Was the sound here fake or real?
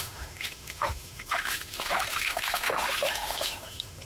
fake